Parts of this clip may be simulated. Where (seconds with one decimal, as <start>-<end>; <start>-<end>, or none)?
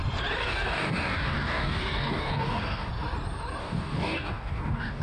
0.4-2.9; 3.6-5.0